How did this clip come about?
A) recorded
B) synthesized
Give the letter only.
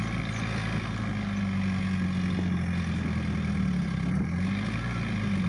A